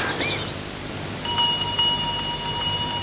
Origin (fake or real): real